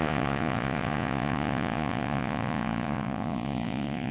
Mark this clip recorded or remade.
remade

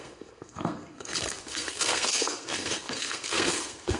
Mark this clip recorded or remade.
remade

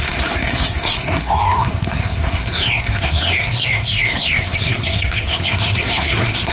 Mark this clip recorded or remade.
remade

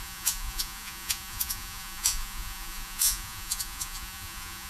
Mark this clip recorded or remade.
remade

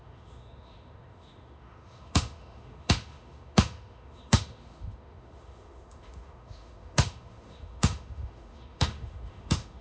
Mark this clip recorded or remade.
remade